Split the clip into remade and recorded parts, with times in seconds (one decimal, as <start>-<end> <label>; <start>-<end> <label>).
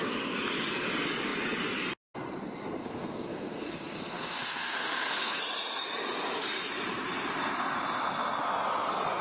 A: 0.0-2.8 recorded; 2.8-5.4 remade; 5.4-9.2 recorded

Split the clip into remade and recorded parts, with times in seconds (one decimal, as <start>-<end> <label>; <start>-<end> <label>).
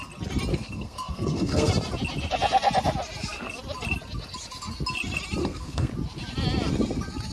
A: 0.0-0.5 recorded; 0.5-1.7 remade; 1.7-5.4 recorded; 5.4-5.9 remade; 5.9-7.3 recorded